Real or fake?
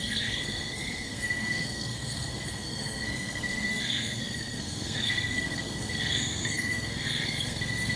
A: fake